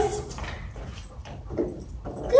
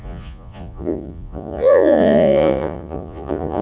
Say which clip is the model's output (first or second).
second